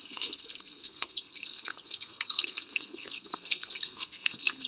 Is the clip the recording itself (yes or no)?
no